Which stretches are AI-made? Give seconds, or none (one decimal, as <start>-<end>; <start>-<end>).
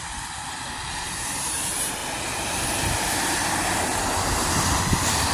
0.0-5.3